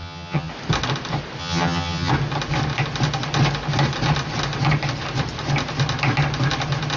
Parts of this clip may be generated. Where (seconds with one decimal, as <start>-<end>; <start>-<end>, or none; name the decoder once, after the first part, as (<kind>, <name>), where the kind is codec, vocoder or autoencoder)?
0.0-0.5 (vocoder, HiFi-GAN); 1.4-2.1